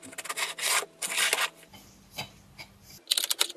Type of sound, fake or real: real